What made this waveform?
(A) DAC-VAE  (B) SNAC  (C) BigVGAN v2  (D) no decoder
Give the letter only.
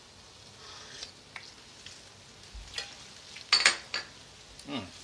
D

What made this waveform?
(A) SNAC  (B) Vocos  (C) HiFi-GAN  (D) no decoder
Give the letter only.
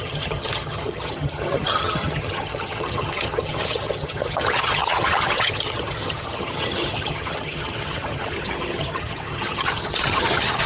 C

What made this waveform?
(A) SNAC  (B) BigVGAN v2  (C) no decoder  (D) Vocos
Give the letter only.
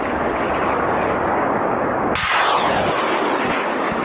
C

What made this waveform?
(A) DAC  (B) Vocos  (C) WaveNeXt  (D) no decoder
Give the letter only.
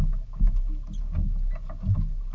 D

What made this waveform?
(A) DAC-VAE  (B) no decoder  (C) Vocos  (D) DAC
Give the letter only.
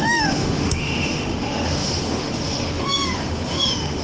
A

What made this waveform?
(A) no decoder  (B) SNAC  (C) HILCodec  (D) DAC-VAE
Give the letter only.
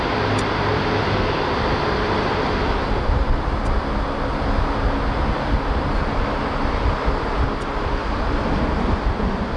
A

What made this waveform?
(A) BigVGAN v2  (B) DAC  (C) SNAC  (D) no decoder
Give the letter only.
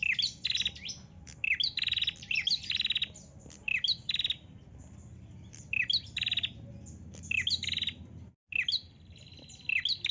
D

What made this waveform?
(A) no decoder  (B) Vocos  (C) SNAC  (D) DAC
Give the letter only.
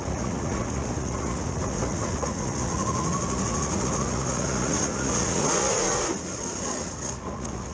B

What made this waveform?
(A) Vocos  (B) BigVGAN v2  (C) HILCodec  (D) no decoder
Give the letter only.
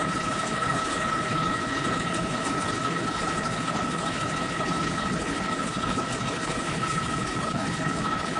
C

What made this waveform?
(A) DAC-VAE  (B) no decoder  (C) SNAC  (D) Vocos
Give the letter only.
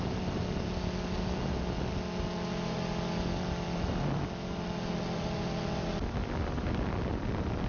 B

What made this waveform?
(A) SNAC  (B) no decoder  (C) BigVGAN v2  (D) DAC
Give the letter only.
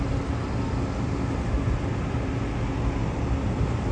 B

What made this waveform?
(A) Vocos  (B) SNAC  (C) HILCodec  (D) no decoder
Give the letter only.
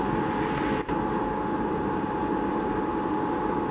D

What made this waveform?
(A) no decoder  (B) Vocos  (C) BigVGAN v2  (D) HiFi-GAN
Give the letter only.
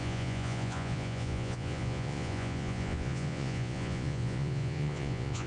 B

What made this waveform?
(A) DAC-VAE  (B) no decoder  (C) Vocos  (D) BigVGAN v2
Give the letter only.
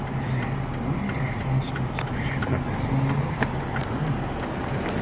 B